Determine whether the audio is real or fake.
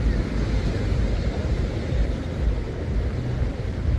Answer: real